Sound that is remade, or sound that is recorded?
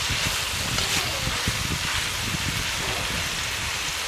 recorded